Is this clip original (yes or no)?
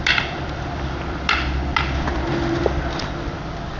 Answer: no